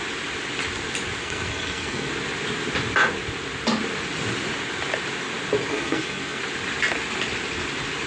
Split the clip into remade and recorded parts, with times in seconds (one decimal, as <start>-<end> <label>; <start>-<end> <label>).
0.0-1.2 recorded; 1.2-2.1 remade; 2.1-5.7 recorded; 5.7-6.4 remade; 6.4-8.1 recorded